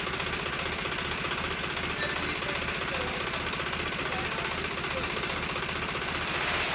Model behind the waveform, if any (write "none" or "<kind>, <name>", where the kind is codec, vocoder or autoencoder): none